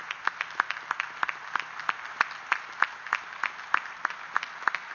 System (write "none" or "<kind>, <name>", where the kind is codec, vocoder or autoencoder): none